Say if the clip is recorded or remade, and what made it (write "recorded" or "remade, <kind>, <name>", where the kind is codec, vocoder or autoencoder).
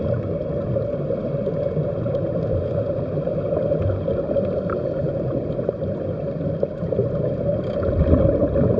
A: recorded